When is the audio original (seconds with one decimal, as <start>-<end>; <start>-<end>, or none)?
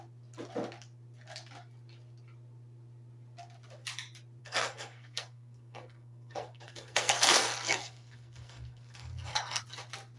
0.0-4.4; 9.6-10.2